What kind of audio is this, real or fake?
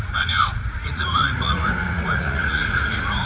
fake